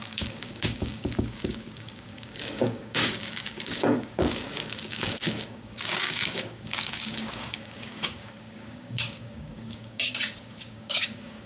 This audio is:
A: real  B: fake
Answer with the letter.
B